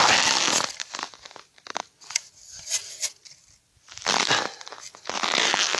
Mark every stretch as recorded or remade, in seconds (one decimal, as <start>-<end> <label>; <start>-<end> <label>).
0.0-5.8 recorded

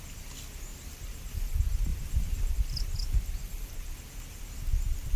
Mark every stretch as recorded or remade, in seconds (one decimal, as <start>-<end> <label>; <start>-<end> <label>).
0.0-0.7 recorded; 0.7-1.4 remade; 1.4-1.9 recorded; 1.9-2.5 remade; 2.5-5.2 recorded

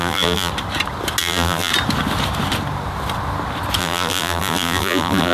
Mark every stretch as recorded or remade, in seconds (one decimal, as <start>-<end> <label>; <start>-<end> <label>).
0.0-0.5 remade; 0.5-1.2 recorded; 1.2-1.7 remade; 1.7-3.8 recorded; 3.8-5.3 remade

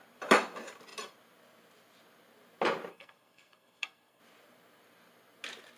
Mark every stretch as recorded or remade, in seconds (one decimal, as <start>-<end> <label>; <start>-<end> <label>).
0.0-2.9 recorded; 2.9-4.2 remade; 4.2-5.8 recorded

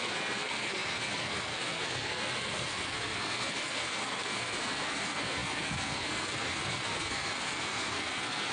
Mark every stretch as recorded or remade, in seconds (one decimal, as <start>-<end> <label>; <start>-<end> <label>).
0.0-8.5 remade

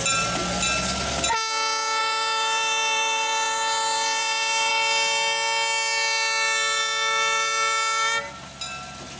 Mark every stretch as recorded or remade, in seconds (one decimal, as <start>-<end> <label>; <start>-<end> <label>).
0.0-2.0 recorded; 2.0-4.7 remade; 4.7-9.2 recorded

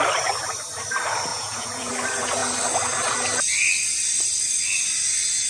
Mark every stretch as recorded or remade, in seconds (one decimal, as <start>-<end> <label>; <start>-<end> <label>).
0.0-1.3 recorded; 1.3-1.9 remade; 1.9-5.5 recorded